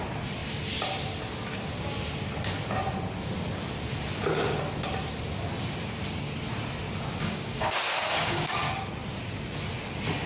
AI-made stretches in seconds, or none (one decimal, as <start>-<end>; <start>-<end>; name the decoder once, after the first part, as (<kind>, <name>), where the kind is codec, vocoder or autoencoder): 7.1-8.6 (codec, DAC)